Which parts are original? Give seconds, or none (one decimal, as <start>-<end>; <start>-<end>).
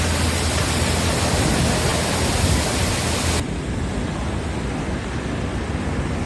0.0-6.3